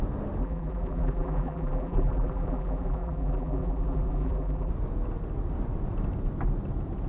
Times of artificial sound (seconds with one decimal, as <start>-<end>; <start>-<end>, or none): 0.4-4.7